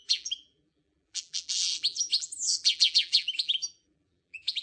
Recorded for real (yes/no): no